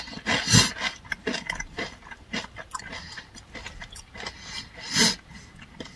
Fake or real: real